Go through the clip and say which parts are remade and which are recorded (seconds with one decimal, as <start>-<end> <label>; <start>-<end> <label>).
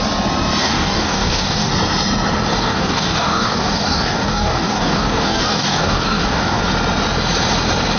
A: 0.0-0.6 recorded; 0.6-1.7 remade; 1.7-2.6 recorded; 2.6-6.6 remade; 6.6-8.0 recorded